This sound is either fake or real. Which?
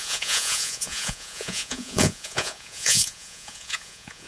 fake